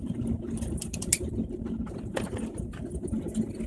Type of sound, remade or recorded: recorded